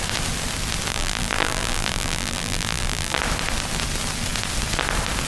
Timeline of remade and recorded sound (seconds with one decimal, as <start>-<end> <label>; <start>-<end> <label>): 0.0-0.9 recorded; 0.9-3.2 remade; 3.2-5.3 recorded